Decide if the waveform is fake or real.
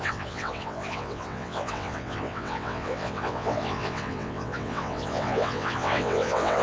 fake